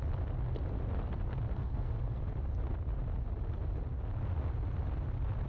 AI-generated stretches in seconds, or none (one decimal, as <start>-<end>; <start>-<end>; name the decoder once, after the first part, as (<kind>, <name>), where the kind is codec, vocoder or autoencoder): 1.5-2.2 (codec, SNAC)